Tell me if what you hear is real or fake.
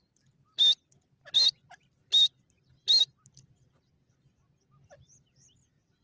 real